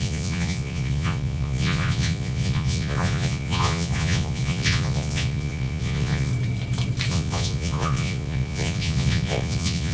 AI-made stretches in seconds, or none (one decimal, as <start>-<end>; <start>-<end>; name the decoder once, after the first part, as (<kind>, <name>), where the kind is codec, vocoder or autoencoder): 0.0-6.3 (vocoder, Vocos); 7.1-9.9